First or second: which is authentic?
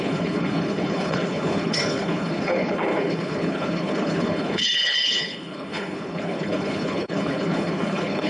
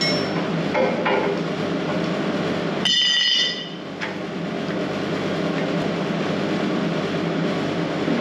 second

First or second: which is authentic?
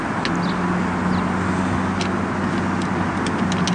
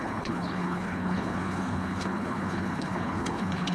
first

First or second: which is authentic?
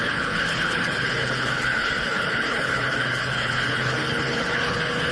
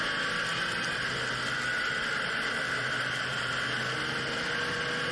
second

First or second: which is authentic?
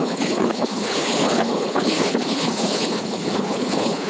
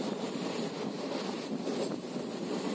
second